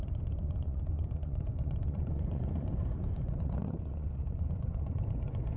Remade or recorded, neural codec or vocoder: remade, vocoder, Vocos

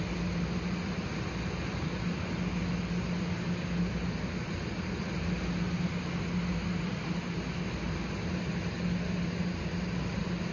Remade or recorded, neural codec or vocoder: recorded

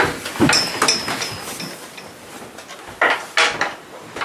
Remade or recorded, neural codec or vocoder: recorded